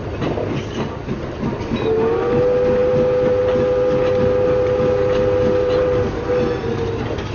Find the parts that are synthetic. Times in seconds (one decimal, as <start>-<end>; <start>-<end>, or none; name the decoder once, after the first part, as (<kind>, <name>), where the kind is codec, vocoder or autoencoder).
none